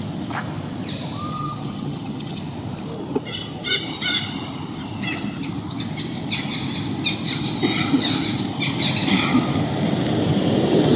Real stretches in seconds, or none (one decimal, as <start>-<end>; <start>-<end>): 0.0-1.3; 2.4-11.0